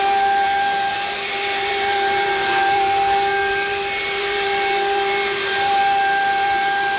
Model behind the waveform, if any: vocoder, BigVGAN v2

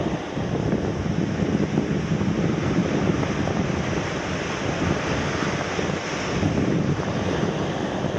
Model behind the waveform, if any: none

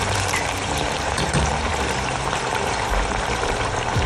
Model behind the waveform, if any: vocoder, BigVGAN v2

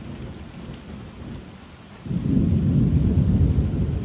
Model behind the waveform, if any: none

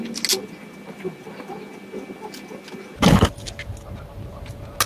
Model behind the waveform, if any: none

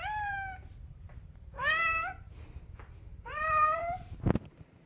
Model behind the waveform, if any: vocoder, BigVGAN v2